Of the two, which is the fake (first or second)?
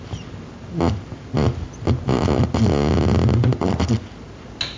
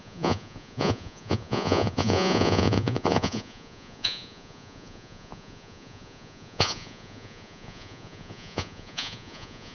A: second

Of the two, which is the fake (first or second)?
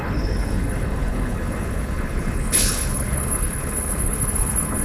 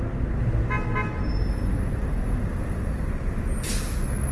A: first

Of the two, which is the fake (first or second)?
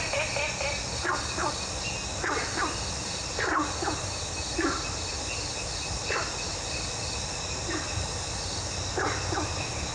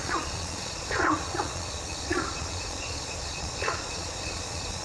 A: second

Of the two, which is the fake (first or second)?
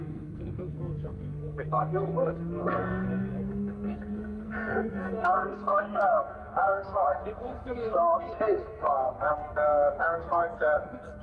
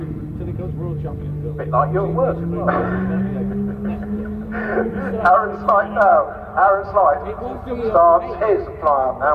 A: first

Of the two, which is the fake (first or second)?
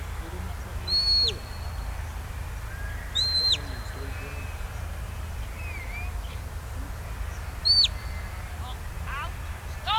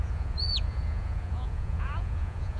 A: second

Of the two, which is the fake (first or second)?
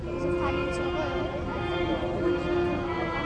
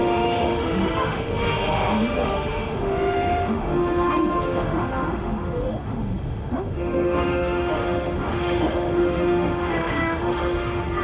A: second